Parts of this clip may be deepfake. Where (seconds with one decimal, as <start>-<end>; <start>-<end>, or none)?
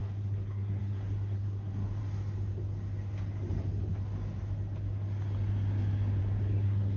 0.0-2.0; 6.2-7.0